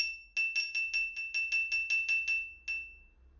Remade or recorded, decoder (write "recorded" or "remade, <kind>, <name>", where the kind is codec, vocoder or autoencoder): recorded